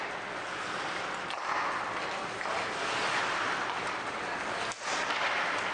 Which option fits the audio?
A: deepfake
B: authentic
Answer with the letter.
B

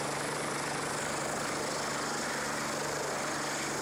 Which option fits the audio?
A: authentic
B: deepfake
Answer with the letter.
A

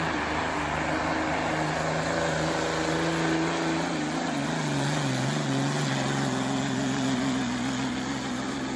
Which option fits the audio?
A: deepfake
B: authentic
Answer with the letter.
B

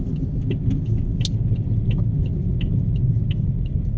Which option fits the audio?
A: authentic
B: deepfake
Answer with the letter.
A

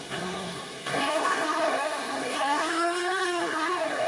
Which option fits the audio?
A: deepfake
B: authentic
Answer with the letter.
A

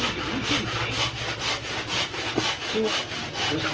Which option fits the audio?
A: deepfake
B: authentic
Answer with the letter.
B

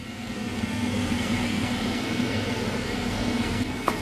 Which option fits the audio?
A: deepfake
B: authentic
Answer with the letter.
A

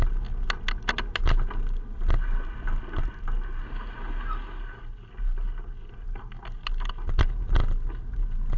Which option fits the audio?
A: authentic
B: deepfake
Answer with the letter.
A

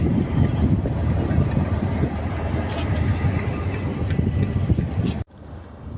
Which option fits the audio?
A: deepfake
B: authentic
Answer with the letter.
B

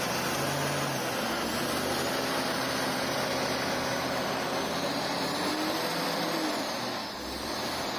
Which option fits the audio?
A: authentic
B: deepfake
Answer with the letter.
A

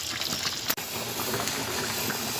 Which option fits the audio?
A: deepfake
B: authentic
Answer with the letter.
B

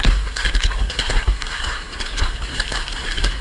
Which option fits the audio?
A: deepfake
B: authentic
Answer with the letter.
A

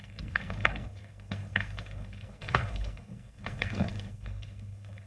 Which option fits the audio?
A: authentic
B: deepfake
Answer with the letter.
B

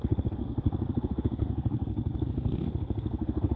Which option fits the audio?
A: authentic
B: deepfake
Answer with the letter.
B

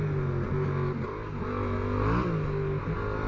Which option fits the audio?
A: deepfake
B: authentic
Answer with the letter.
B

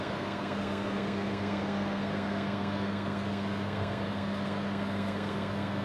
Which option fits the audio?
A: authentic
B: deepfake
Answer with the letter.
B